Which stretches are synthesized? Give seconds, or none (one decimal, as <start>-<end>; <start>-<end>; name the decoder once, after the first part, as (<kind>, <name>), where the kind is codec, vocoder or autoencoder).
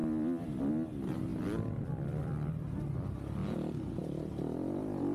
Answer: 3.4-4.0 (vocoder, BigVGAN v2)